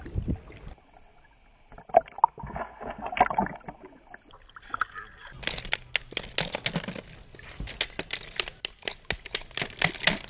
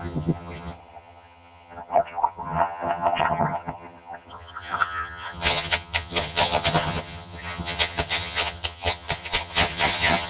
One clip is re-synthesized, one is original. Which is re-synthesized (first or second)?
second